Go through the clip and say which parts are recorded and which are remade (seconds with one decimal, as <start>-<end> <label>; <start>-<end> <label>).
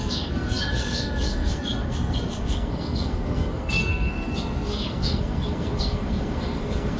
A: 0.0-7.0 remade